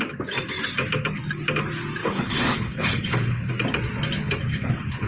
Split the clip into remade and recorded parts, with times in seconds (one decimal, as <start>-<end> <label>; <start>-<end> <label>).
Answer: 0.0-2.0 recorded; 2.0-3.5 remade; 3.5-4.2 recorded; 4.2-5.1 remade